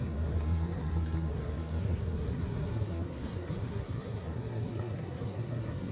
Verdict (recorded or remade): remade